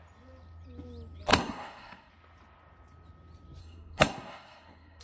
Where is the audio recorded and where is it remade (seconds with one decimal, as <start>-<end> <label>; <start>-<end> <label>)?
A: 0.0-1.3 recorded; 1.3-2.1 remade; 2.1-3.6 recorded; 3.6-5.0 remade